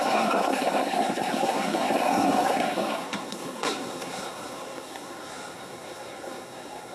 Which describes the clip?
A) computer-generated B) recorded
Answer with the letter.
A